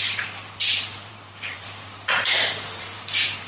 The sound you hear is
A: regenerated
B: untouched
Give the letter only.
A